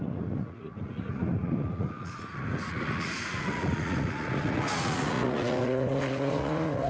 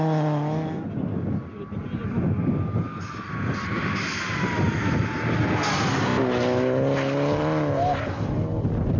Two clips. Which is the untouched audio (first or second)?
second